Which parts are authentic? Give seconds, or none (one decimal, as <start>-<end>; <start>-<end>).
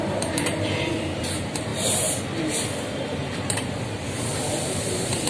1.7-3.0; 4.3-4.8